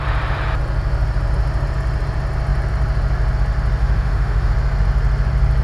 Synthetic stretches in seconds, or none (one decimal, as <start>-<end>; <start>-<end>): 3.8-4.5